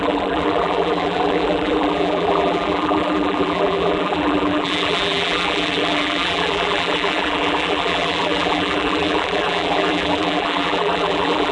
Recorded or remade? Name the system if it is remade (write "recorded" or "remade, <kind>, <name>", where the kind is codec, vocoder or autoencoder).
remade, vocoder, BigVGAN v2